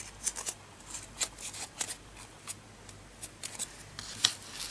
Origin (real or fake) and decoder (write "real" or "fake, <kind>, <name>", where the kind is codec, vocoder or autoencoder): real